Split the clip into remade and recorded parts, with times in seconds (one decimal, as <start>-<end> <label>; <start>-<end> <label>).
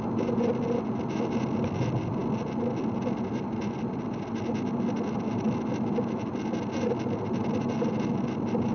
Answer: 0.0-8.7 recorded